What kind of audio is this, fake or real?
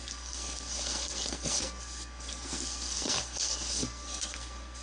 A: fake